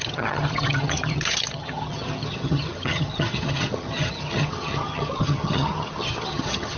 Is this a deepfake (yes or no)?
yes